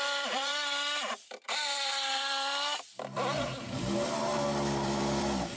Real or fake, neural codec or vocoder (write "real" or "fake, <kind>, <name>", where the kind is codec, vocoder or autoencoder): fake, vocoder, BigVGAN v2